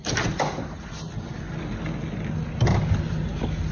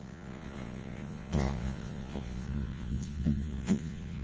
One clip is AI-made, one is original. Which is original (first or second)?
first